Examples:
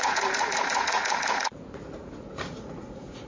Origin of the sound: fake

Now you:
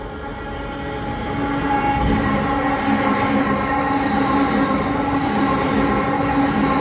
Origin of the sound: real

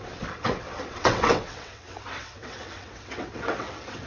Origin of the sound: fake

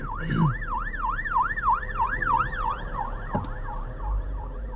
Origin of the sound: fake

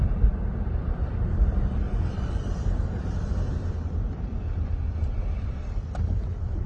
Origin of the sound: fake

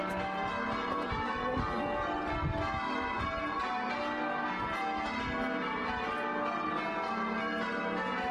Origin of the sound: real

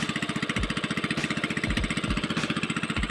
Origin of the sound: real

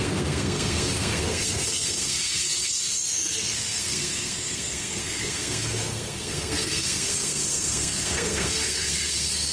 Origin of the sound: fake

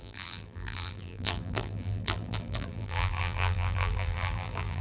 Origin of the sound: fake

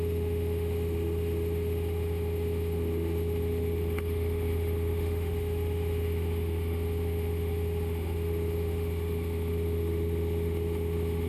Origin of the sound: fake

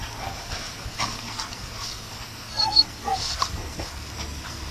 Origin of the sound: fake